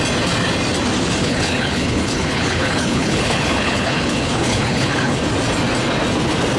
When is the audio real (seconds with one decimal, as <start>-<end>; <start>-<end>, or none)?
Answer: 0.0-1.2; 5.2-6.6